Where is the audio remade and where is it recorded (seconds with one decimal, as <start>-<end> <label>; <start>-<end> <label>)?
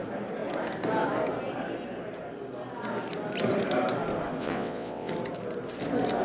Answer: 0.0-4.4 recorded; 4.4-5.1 remade; 5.1-6.2 recorded